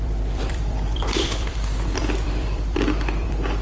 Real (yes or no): no